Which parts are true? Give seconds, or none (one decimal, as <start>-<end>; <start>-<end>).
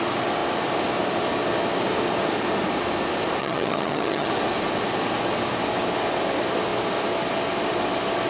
0.0-3.4; 4.3-8.3